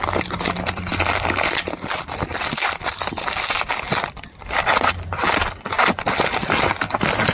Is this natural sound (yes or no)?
yes